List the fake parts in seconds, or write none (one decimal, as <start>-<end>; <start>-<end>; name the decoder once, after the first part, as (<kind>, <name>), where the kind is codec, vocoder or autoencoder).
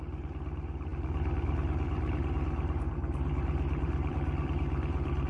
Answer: 0.0-5.3 (vocoder, BigVGAN v2)